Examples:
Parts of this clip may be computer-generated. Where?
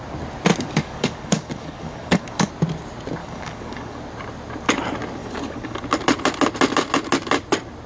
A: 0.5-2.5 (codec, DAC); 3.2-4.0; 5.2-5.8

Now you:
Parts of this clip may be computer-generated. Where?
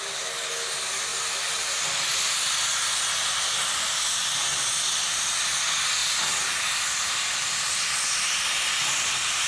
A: none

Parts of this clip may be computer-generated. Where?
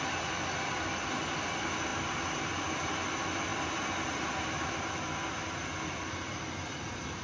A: none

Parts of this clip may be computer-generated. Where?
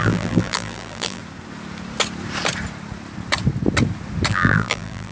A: 0.0-1.2 (vocoder, BigVGAN v2); 4.3-5.1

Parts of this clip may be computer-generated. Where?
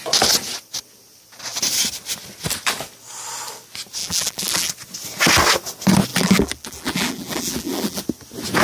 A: 4.0-4.7 (vocoder, BigVGAN v2); 6.1-8.0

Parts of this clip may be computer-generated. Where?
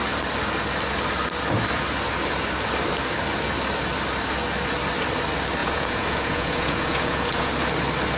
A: 5.6-7.5 (vocoder, Vocos)